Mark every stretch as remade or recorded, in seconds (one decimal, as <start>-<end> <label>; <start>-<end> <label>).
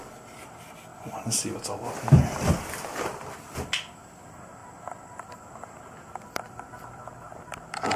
0.0-8.0 recorded